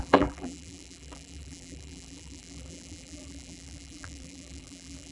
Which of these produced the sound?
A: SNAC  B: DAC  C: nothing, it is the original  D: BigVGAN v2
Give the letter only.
D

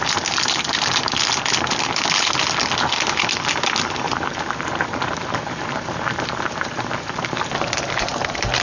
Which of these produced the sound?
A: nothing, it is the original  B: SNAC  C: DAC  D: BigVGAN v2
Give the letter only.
D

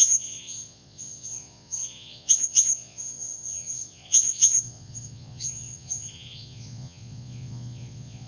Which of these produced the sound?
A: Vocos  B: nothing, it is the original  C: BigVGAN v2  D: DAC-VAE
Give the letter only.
A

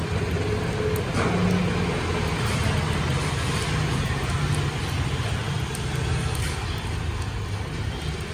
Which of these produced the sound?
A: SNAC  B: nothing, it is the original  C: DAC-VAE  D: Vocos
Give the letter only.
B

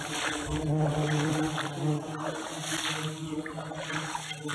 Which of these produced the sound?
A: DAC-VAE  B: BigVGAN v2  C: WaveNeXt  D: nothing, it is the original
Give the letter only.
D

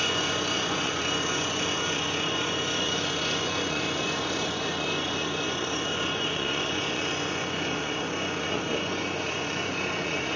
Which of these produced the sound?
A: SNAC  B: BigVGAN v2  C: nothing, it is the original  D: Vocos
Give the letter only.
D